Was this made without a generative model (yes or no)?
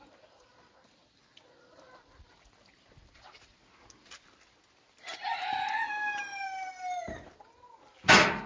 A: yes